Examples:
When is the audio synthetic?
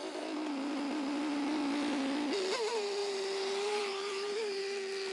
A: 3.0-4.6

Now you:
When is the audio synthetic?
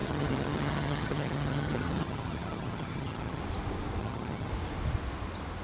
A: 0.0-3.4; 4.0-4.5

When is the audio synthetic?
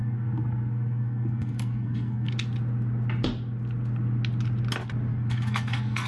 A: 0.0-2.3; 5.1-6.1